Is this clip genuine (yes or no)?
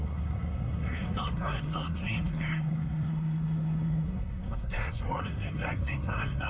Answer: no